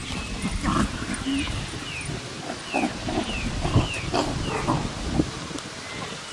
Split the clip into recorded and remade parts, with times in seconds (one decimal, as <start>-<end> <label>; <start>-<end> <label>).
0.0-6.3 recorded